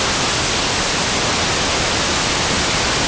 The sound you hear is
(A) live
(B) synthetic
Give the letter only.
A